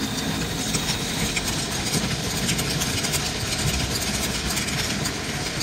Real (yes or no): yes